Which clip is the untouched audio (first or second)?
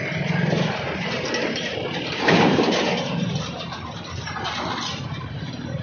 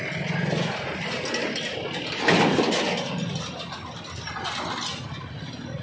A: second